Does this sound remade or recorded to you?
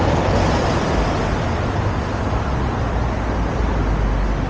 recorded